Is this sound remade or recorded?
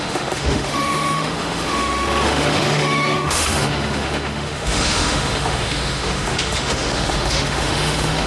remade